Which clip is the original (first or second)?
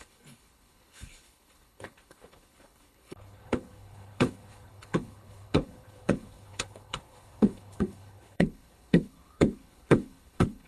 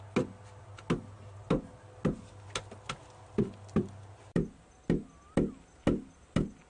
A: second